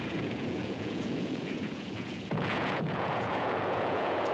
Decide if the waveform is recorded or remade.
remade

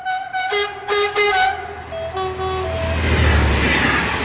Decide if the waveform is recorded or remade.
recorded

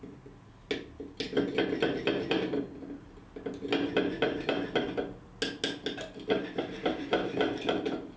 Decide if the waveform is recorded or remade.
recorded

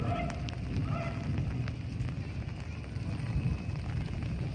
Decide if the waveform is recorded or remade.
recorded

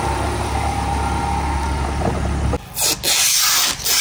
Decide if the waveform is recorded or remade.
recorded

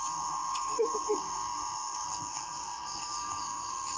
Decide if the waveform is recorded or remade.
remade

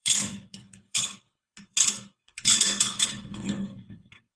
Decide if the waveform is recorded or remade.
remade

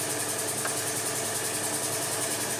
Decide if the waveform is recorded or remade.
recorded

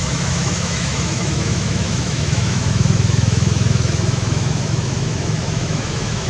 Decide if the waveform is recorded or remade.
remade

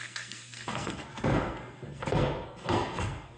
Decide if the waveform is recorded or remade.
remade